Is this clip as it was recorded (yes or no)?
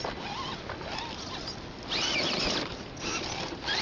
yes